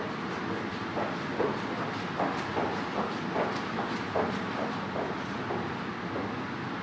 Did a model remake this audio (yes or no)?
no